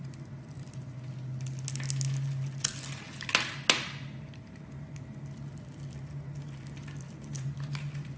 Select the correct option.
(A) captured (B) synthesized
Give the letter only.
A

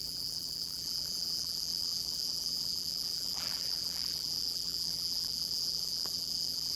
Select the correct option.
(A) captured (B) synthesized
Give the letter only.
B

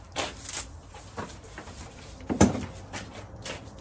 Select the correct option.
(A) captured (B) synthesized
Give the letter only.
B